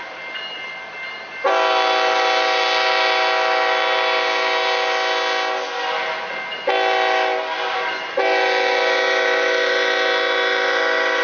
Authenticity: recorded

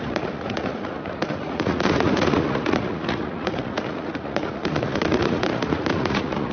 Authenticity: remade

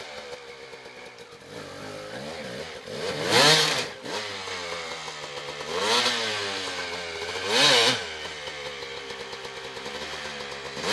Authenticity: recorded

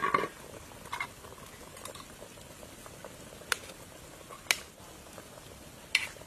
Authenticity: recorded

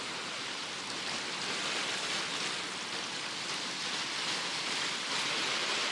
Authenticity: recorded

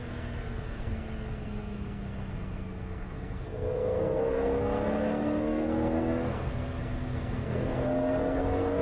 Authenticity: remade